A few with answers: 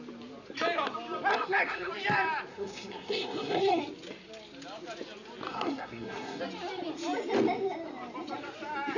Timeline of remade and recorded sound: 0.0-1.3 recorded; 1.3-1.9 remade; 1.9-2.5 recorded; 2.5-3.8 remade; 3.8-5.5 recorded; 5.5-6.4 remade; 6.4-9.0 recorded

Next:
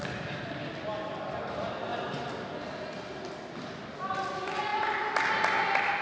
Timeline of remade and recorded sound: 0.0-6.0 recorded